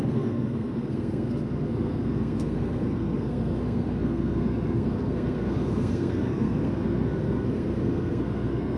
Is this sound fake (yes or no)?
yes